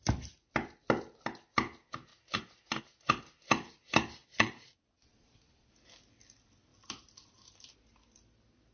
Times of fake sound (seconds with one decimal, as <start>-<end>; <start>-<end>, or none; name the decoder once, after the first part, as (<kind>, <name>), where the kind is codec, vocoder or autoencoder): 4.2-5.7 (vocoder, Vocos)